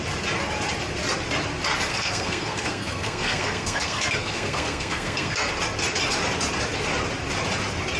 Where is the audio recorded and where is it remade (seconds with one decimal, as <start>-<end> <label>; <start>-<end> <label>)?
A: 0.0-1.9 recorded; 1.9-5.5 remade; 5.5-8.0 recorded

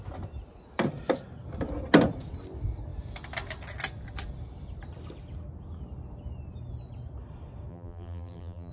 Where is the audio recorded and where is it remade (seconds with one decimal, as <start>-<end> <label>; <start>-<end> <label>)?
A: 0.0-7.7 recorded; 7.7-8.7 remade

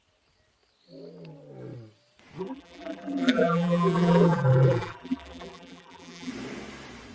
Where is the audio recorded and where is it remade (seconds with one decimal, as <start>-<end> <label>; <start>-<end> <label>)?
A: 0.0-2.4 recorded; 2.4-6.3 remade; 6.3-7.1 recorded

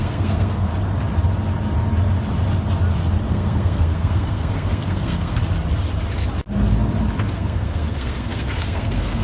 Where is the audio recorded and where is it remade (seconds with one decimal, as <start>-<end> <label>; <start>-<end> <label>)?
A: 0.0-0.7 remade; 0.7-3.3 recorded; 3.3-5.4 remade; 5.4-7.3 recorded; 7.3-9.2 remade

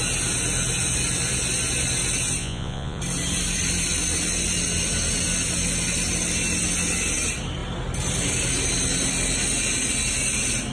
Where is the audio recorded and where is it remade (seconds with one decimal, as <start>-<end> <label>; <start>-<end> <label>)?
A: 0.0-2.4 recorded; 2.4-3.0 remade; 3.0-10.7 recorded

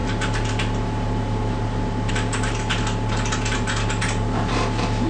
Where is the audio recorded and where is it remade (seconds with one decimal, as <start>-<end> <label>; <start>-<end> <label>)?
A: 0.0-5.1 recorded

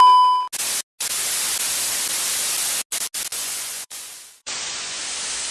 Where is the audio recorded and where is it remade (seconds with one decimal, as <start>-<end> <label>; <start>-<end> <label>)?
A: 0.0-3.3 recorded; 3.3-5.0 remade; 5.0-5.5 recorded